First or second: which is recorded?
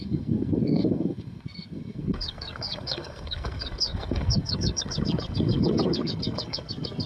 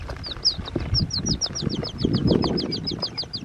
second